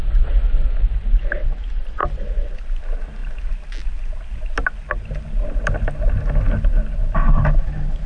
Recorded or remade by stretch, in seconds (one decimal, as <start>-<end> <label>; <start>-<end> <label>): 0.0-8.1 recorded